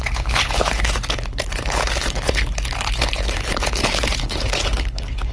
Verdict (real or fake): fake